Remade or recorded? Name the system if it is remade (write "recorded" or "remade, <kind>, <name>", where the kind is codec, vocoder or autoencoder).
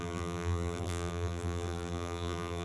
remade, vocoder, BigVGAN v2